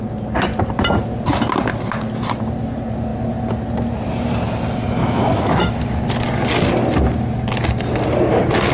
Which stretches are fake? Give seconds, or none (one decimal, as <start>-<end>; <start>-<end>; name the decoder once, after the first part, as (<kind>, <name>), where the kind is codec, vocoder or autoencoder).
5.0-5.8 (autoencoder, DAC-VAE)